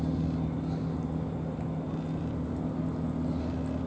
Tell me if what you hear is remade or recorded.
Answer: recorded